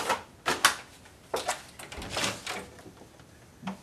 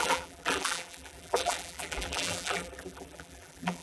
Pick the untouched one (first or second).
first